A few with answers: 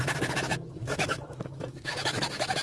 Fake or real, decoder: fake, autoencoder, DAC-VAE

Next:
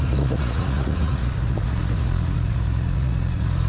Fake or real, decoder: fake, vocoder, Vocos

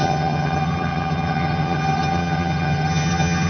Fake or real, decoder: fake, vocoder, HiFi-GAN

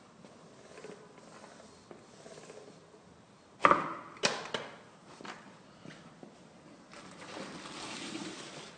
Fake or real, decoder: real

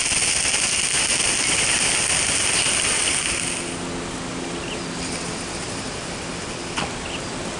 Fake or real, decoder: real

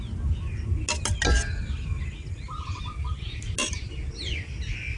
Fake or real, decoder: real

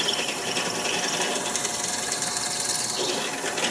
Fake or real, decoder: real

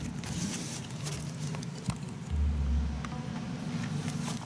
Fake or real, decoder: real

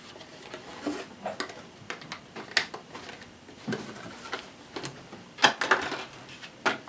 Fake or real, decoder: real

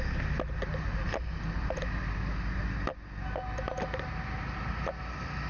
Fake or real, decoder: real